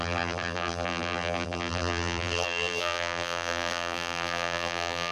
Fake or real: fake